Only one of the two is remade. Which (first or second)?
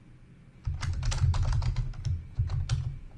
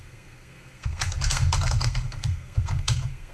second